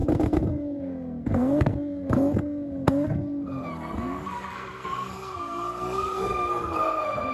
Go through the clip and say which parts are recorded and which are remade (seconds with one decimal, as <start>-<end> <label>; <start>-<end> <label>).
0.0-7.3 remade